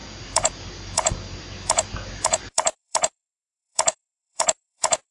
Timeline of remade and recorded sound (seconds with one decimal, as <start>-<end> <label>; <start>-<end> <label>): 0.0-5.1 remade